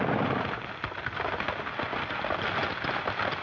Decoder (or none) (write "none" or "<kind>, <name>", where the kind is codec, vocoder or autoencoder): none